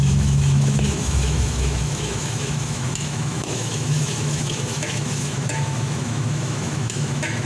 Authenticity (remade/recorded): remade